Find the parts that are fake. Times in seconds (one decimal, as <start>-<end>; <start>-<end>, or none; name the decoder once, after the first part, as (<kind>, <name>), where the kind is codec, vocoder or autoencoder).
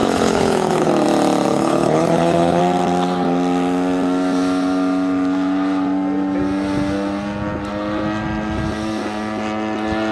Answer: 0.0-0.9 (codec, HILCodec); 1.5-2.6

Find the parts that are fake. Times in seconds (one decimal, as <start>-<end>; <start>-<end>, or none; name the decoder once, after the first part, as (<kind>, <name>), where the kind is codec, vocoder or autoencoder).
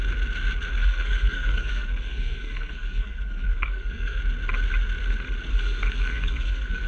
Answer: 0.7-4.2 (codec, SNAC); 5.5-6.9